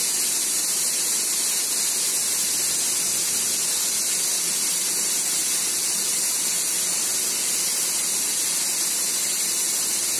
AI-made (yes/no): no